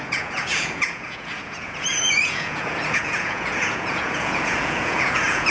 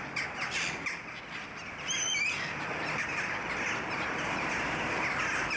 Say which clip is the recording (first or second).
second